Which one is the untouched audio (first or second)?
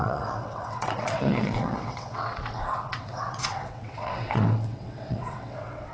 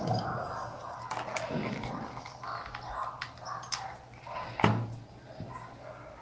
second